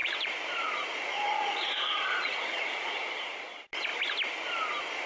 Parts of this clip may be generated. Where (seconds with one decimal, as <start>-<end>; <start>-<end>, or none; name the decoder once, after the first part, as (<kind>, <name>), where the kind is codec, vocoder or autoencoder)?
0.0-3.1 (vocoder, Vocos)